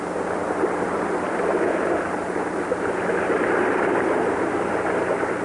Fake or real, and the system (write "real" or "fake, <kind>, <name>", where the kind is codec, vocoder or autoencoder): real